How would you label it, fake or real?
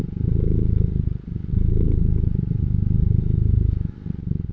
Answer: real